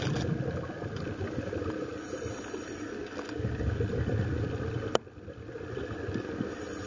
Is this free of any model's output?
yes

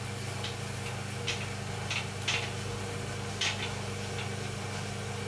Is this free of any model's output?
yes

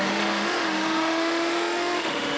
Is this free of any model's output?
no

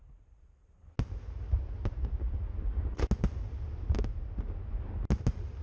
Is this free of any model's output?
yes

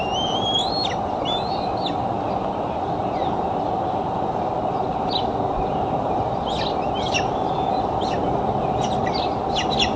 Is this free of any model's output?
yes